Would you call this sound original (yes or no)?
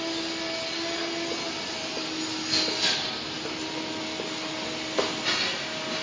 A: yes